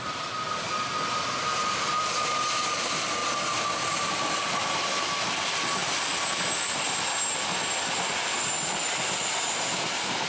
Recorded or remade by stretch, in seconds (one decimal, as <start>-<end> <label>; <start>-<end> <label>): 0.0-1.5 recorded; 1.5-2.1 remade; 2.1-10.3 recorded